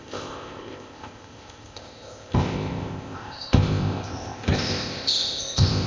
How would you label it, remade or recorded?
remade